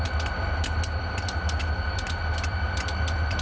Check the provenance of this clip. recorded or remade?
recorded